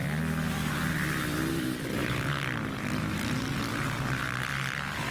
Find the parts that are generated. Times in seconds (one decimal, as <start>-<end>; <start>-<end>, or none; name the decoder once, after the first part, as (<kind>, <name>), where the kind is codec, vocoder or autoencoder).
none

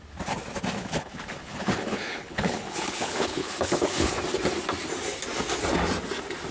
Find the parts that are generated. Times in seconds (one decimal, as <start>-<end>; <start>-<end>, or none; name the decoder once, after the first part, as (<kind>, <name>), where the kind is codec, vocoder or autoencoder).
0.8-4.1 (codec, HILCodec)

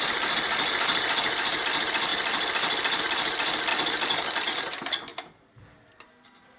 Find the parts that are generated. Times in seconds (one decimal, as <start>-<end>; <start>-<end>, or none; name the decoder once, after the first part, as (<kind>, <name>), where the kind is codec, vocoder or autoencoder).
none

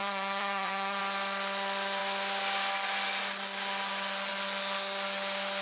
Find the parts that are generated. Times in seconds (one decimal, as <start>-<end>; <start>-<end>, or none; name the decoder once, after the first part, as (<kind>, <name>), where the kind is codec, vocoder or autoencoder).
0.0-1.0 (vocoder, HiFi-GAN)

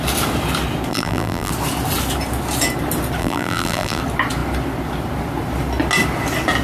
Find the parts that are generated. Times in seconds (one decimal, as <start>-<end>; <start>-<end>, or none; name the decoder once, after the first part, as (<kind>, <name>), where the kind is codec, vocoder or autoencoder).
0.9-1.5 (vocoder, BigVGAN v2); 3.2-4.0